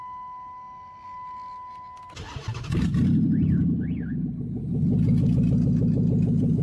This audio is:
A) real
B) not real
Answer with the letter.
A